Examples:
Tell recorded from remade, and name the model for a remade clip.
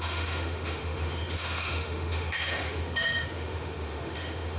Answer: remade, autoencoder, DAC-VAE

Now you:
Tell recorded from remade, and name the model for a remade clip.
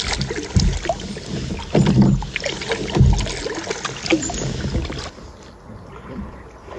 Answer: recorded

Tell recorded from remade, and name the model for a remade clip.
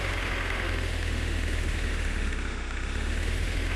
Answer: remade, autoencoder, DAC-VAE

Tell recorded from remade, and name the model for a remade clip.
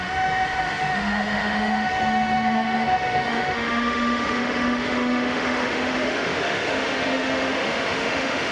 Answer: remade, autoencoder, DAC-VAE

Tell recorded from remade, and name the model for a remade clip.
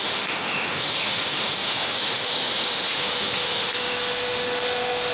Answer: remade, autoencoder, DAC-VAE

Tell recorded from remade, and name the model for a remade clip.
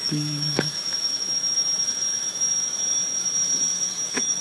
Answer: remade, autoencoder, DAC-VAE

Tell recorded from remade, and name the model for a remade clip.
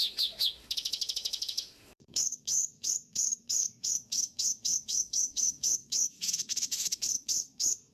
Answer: remade, autoencoder, DAC-VAE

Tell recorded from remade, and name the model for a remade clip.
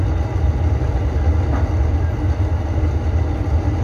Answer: recorded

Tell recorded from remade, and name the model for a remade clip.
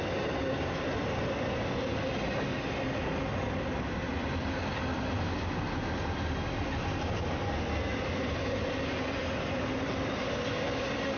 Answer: recorded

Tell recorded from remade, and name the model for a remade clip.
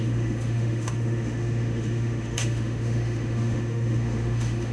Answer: remade, autoencoder, DAC-VAE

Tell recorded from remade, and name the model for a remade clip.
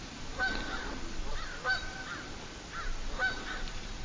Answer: recorded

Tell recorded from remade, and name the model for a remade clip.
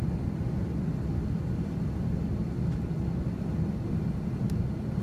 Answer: recorded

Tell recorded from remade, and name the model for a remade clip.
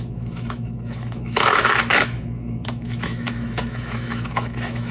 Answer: remade, autoencoder, DAC-VAE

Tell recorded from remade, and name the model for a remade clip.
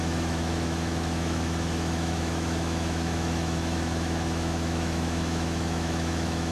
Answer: remade, autoencoder, DAC-VAE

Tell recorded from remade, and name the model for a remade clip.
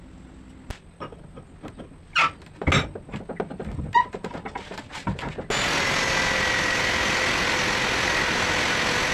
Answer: recorded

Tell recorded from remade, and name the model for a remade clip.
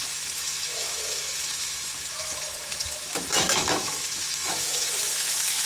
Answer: remade, autoencoder, DAC-VAE